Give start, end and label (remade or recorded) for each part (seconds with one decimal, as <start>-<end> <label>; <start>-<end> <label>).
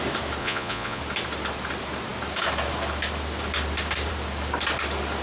0.0-0.4 recorded; 0.4-1.0 remade; 1.0-5.2 recorded